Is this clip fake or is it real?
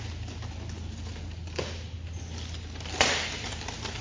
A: real